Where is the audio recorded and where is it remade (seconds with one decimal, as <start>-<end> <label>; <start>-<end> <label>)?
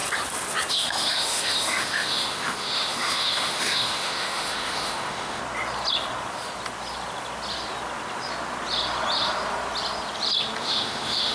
0.0-0.7 recorded; 0.7-5.4 remade; 5.4-10.6 recorded; 10.6-11.3 remade